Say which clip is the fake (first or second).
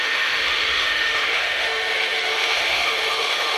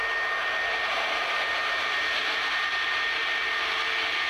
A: first